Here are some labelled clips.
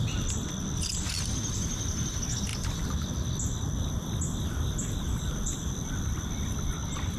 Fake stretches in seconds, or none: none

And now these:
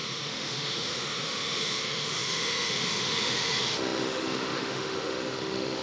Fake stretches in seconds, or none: 0.0-5.8 (autoencoder, DAC-VAE)

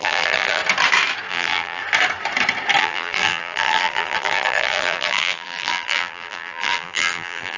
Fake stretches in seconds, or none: 0.0-0.6 (vocoder, BigVGAN v2); 1.3-1.8; 2.8-7.6

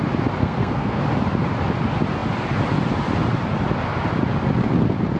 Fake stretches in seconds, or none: 0.4-1.0 (codec, SNAC)

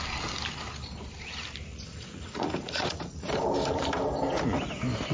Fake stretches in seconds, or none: 1.7-3.3 (vocoder, Vocos)

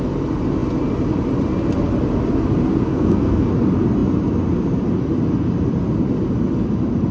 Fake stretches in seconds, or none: 2.9-3.5 (codec, SNAC)

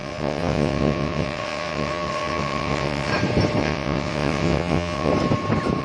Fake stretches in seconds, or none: 0.0-3.1 (vocoder, WaveNeXt); 3.6-5.1